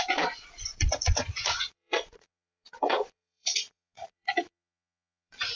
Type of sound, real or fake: fake